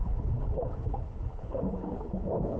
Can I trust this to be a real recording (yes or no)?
no